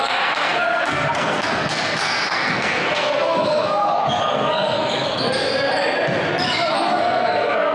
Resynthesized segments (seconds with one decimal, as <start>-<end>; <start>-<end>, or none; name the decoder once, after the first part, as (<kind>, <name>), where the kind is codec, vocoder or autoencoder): 0.0-5.5 (codec, SNAC); 6.7-7.7

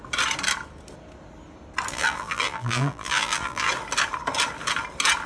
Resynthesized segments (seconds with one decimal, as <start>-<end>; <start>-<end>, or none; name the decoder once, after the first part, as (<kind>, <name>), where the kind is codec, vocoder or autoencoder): 1.9-3.7 (vocoder, BigVGAN v2)

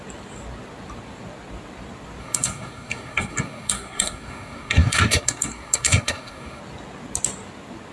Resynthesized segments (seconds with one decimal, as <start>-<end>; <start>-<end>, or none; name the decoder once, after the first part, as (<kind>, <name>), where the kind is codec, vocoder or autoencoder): 2.2-6.6 (codec, SNAC)

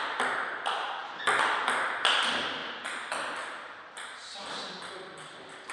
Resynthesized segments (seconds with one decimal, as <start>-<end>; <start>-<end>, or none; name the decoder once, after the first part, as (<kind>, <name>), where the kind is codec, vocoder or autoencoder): none

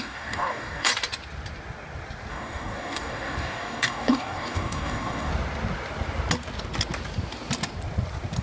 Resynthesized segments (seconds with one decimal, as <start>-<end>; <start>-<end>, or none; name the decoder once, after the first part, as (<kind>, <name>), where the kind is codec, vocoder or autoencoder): 0.0-0.9 (codec, DAC); 2.3-5.3

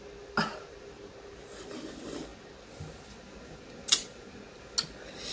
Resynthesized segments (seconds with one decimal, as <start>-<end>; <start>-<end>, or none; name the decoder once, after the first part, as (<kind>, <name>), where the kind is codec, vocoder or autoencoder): none

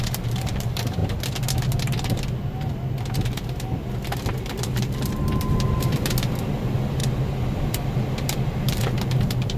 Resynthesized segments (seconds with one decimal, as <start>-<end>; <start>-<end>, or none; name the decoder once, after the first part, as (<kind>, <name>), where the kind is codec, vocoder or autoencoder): 0.0-1.0 (vocoder, BigVGAN v2); 4.5-7.0; 7.5-9.6